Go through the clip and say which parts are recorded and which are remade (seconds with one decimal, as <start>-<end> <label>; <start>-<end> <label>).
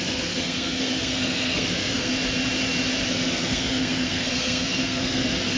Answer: 0.0-2.1 remade; 2.1-3.1 recorded; 3.1-5.6 remade